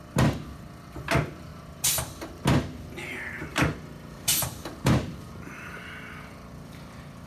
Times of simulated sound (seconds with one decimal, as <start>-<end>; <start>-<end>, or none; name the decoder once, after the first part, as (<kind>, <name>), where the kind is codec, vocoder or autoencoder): 3.5-5.8 (vocoder, BigVGAN v2)